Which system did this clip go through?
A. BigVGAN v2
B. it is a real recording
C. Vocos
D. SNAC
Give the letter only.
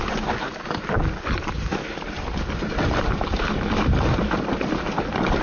B